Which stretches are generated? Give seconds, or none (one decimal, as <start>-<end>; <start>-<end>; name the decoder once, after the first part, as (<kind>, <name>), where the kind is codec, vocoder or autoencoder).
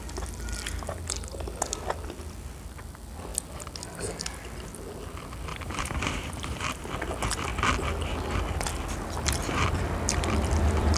5.5-6.9 (vocoder, BigVGAN v2)